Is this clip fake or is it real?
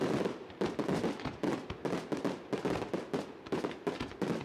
real